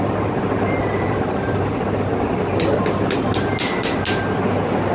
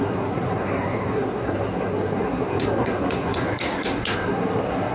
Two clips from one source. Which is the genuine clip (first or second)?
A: first